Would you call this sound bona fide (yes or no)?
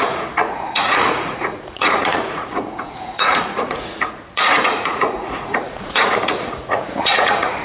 no